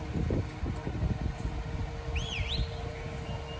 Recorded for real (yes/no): yes